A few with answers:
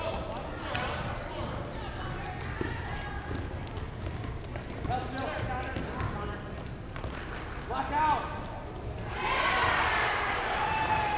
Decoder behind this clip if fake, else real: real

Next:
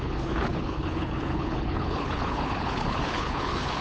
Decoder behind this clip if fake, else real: fake, codec, HILCodec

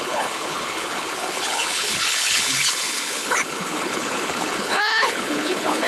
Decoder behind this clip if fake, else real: fake, codec, HILCodec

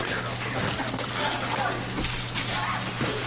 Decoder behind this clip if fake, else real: real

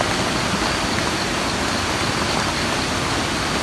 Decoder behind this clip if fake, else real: real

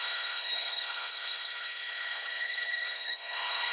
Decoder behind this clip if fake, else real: fake, codec, HILCodec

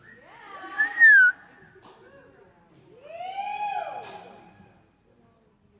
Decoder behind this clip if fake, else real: real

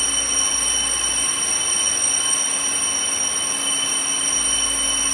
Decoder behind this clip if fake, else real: real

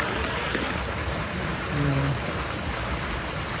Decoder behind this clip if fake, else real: real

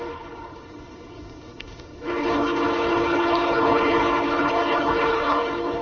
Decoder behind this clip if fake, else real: fake, codec, HILCodec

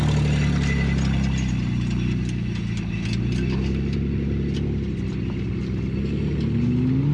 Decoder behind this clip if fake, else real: real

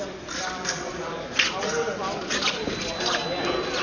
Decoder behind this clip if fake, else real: real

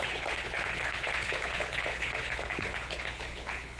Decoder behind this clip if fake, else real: fake, codec, HILCodec